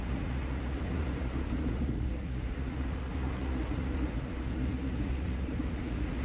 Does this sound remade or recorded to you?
remade